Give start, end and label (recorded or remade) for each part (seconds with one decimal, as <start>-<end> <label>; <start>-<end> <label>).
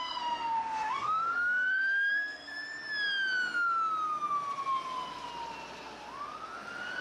0.0-2.5 remade; 2.5-7.0 recorded